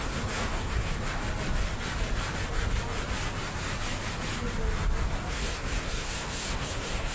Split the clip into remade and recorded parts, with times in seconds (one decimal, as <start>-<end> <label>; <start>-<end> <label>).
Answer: 0.0-1.2 remade; 1.2-5.3 recorded; 5.3-7.1 remade